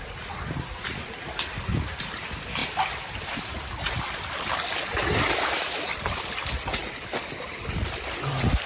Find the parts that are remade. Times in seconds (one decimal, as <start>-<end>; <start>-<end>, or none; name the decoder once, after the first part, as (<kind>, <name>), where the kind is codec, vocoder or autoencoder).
none